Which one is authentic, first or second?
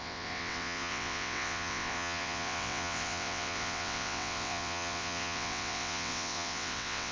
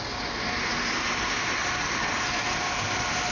second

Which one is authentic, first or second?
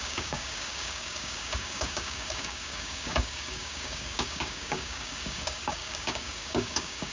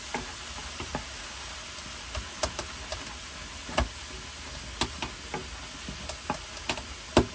second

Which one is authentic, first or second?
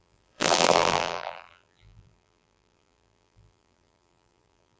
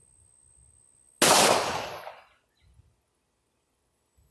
second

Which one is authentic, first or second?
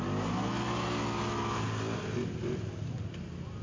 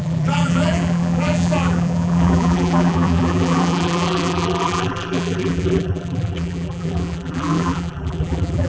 first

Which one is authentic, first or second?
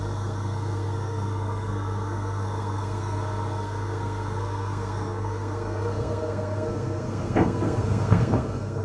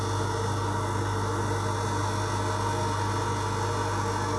second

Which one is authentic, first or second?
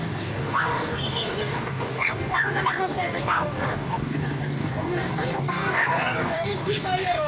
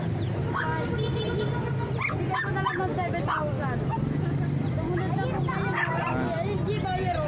second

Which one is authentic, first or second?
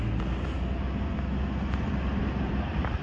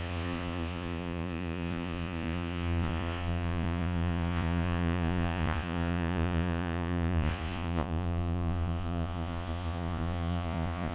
first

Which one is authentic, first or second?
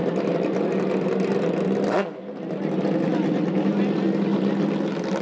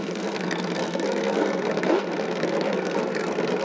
first